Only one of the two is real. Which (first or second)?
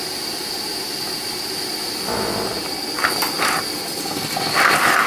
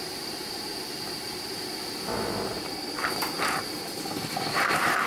first